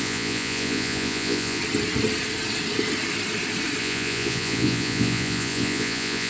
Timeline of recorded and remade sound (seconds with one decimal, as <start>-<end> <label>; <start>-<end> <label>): 0.0-1.6 remade; 1.6-3.8 recorded; 3.8-6.3 remade